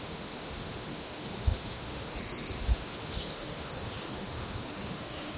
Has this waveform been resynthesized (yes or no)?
yes